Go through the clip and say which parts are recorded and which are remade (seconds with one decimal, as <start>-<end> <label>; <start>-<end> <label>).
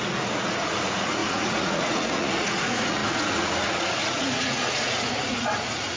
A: 0.0-6.0 remade